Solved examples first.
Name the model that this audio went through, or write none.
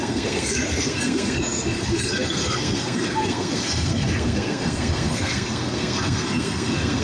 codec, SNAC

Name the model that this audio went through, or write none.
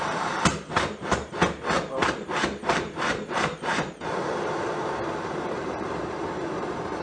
vocoder, BigVGAN v2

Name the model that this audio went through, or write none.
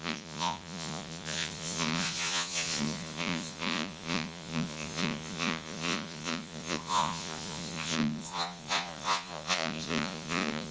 vocoder, Vocos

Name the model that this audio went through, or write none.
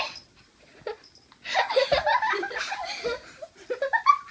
none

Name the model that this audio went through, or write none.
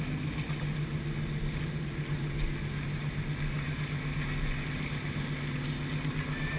none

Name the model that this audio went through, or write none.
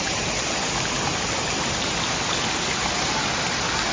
none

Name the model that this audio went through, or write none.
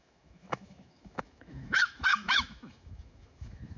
autoencoder, DAC-VAE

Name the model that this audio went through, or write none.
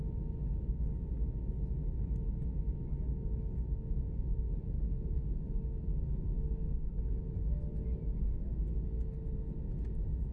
none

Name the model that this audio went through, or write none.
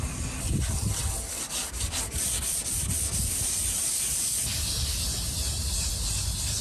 none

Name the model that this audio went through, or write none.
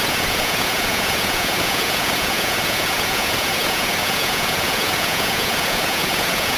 vocoder, Vocos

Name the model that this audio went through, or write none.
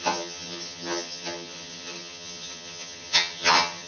vocoder, HiFi-GAN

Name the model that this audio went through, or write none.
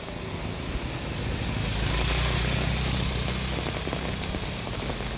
none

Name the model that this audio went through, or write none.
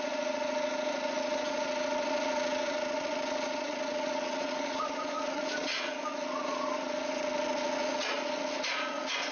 vocoder, Vocos